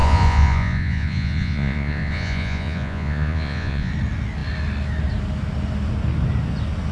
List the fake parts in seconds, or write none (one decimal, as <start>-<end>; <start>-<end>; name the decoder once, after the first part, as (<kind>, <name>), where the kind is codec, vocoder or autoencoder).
0.0-3.9 (vocoder, Vocos)